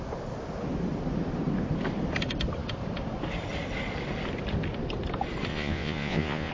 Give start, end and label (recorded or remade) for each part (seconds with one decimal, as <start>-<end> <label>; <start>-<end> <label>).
0.0-5.5 recorded; 5.5-6.5 remade